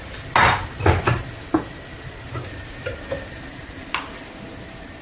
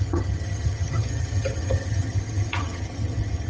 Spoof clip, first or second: second